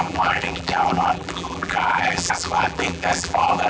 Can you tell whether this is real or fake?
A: fake